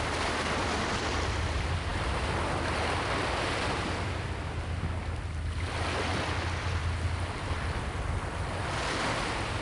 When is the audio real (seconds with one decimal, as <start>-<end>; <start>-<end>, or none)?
0.0-9.6